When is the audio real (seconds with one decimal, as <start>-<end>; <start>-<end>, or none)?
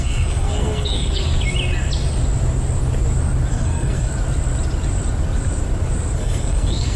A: 1.2-3.5; 4.1-6.2